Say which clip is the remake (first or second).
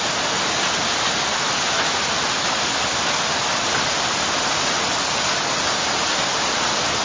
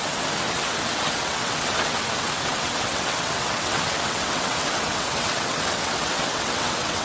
second